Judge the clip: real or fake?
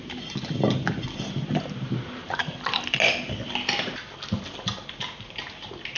real